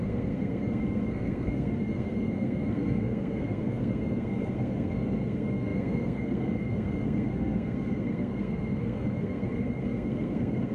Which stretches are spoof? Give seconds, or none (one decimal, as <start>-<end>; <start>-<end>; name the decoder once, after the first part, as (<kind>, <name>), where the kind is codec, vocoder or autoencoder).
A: 0.0-10.7 (codec, SNAC)